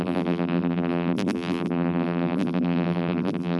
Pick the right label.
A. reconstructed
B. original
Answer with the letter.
A